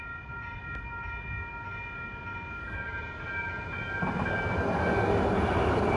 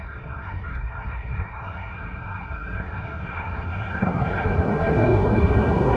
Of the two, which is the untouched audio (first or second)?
first